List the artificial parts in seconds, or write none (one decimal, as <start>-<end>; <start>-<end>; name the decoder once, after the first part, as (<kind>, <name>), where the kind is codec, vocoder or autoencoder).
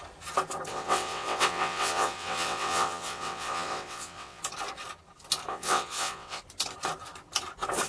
0.7-4.4 (vocoder, WaveNeXt); 5.5-6.4